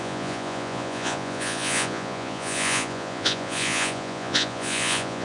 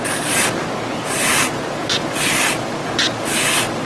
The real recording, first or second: second